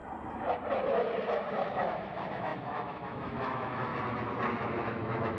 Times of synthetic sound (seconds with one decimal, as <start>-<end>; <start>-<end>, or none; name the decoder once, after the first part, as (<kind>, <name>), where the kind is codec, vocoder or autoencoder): 1.5-3.9 (autoencoder, DAC-VAE); 4.6-5.4